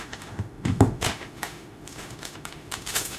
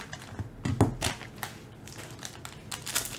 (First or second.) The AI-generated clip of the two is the first